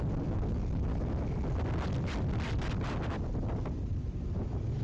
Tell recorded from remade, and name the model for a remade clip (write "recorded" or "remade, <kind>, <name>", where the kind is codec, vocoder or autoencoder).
recorded